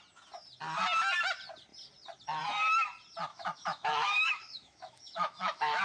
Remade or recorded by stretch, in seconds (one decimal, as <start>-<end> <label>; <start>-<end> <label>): 0.0-3.3 recorded; 3.3-5.8 remade